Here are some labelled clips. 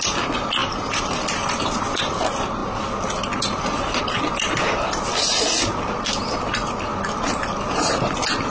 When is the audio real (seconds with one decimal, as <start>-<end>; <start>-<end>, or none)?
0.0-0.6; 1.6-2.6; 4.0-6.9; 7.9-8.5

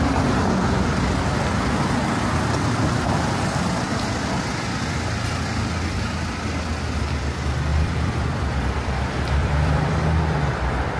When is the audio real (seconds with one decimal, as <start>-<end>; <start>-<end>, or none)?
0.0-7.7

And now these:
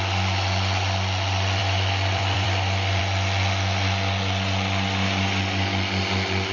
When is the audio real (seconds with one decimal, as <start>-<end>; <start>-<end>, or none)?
0.0-1.6; 3.0-6.5

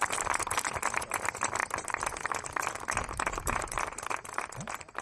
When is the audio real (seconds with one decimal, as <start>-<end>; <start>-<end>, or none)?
0.0-5.0

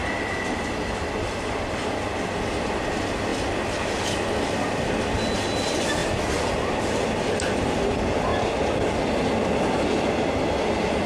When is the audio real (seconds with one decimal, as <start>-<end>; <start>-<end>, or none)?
0.0-11.1

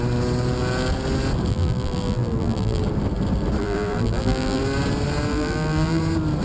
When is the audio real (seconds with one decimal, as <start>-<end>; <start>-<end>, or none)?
0.0-1.5; 2.8-3.6; 4.6-5.3; 6.0-6.4